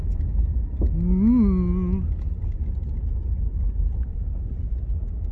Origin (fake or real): real